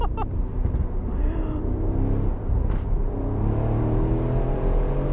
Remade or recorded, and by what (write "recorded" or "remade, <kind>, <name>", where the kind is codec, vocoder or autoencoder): recorded